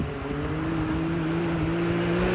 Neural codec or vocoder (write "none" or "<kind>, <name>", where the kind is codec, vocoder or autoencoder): none